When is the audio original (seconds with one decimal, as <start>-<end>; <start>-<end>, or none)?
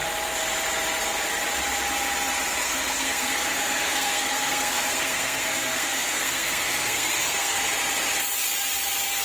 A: 0.0-2.6; 7.7-9.2